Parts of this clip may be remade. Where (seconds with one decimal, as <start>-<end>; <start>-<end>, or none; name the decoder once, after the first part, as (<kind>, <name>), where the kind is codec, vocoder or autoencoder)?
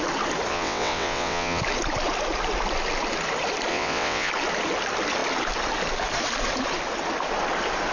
0.5-1.6 (vocoder, WaveNeXt); 3.7-4.3